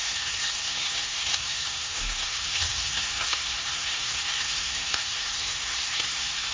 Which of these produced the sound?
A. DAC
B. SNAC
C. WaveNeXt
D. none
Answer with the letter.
B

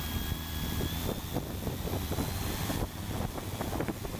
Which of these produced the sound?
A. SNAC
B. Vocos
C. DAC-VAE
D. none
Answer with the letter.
D